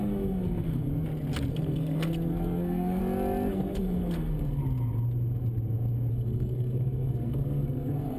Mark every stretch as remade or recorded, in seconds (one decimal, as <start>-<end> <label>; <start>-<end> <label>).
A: 0.0-0.9 remade; 0.9-1.5 recorded; 1.5-3.0 remade; 3.0-3.5 recorded; 3.5-4.6 remade; 4.6-6.1 recorded; 6.1-8.2 remade